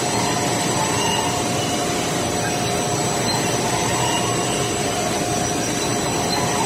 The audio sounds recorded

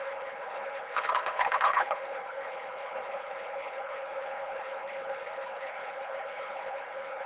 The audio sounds remade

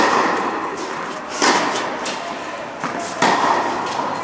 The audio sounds recorded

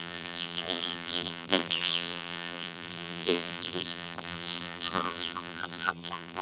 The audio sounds remade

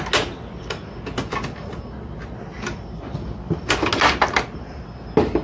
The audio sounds recorded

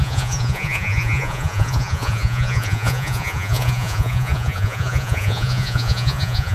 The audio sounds remade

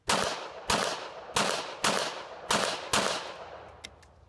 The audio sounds recorded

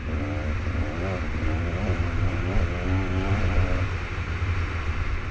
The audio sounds recorded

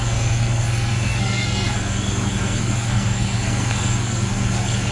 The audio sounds remade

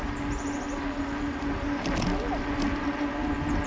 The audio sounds recorded